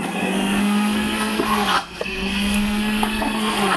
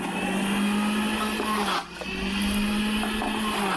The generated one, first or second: first